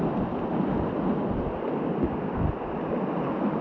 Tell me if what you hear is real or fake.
real